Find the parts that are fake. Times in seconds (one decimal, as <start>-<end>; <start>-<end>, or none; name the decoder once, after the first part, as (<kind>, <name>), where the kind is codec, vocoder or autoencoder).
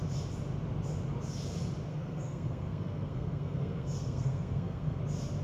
1.9-5.0 (codec, SNAC)